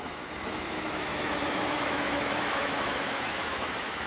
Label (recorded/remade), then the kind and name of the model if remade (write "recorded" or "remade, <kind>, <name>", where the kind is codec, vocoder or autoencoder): remade, autoencoder, DAC-VAE